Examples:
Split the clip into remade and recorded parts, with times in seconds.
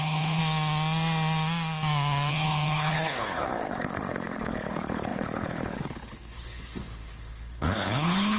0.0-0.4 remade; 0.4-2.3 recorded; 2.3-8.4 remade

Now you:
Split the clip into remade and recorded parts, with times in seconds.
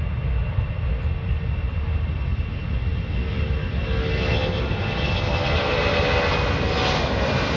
0.0-7.6 recorded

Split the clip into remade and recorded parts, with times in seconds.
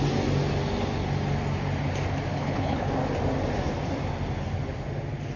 0.0-2.3 recorded; 2.3-2.9 remade; 2.9-5.4 recorded